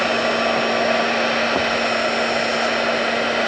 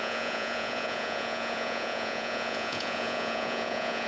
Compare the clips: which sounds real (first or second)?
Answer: first